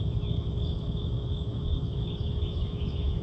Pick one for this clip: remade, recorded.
remade